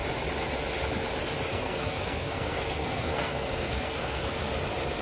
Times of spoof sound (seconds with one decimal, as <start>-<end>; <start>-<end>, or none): 1.5-4.5